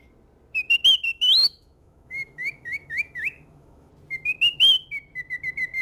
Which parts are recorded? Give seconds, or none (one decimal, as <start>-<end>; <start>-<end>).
0.0-1.1; 3.9-5.8